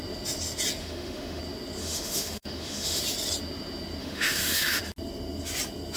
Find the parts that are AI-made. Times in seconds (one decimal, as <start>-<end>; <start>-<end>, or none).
0.8-1.4; 1.8-3.0; 4.0-4.8